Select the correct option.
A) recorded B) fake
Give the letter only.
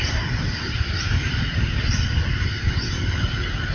B